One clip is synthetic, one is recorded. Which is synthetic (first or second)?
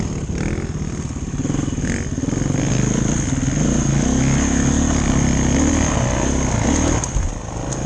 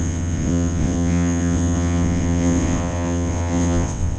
second